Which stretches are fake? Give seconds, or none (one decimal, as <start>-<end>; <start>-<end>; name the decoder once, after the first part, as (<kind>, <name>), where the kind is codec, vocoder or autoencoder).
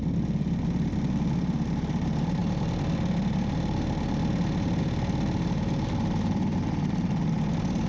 none